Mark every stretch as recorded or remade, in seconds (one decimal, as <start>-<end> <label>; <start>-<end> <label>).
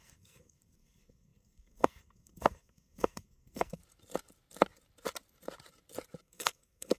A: 0.0-3.8 remade; 3.8-6.2 recorded; 6.2-7.0 remade